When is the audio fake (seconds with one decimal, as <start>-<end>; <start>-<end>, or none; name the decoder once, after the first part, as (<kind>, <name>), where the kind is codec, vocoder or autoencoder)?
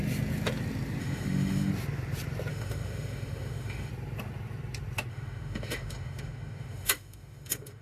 1.0-1.7 (autoencoder, DAC-VAE); 2.5-3.9; 5.1-7.8